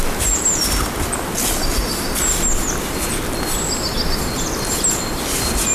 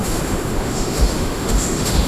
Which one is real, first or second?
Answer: first